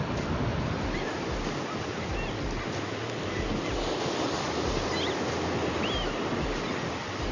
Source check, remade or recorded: recorded